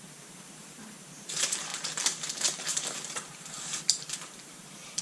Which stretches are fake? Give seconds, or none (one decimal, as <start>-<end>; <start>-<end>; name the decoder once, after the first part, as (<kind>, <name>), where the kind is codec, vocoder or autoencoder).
0.0-5.0 (vocoder, BigVGAN v2)